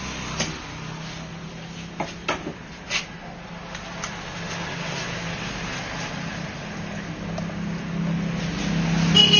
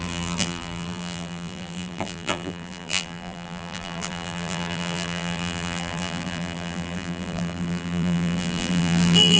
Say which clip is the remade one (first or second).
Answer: second